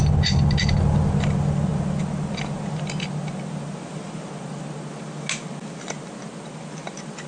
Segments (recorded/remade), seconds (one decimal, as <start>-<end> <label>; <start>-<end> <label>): 0.0-7.3 recorded

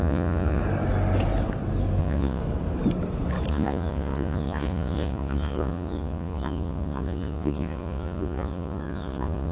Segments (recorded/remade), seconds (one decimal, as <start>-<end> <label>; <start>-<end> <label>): 0.0-0.6 remade; 0.6-2.0 recorded; 2.0-2.4 remade; 2.4-3.5 recorded; 3.5-9.5 remade

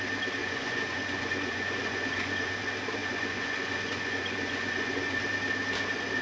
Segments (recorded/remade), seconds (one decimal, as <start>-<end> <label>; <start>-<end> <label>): 0.0-0.4 recorded; 0.4-2.5 remade; 2.5-3.0 recorded; 3.0-5.2 remade; 5.2-6.2 recorded

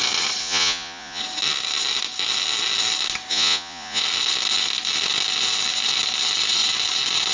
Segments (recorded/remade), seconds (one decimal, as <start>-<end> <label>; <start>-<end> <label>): 0.0-0.4 recorded; 0.4-1.2 remade; 1.2-3.3 recorded; 3.3-4.0 remade; 4.0-7.3 recorded